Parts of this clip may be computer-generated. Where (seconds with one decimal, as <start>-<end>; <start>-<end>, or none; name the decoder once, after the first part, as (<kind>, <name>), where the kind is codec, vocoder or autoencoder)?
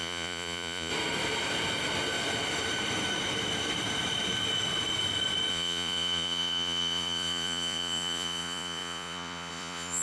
0.0-0.9 (vocoder, Vocos); 5.5-10.0